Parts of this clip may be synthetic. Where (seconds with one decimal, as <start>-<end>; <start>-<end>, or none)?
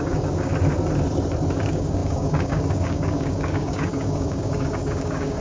0.0-0.5; 1.6-5.4